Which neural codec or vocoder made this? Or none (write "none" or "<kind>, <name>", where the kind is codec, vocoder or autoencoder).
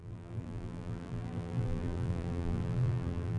vocoder, BigVGAN v2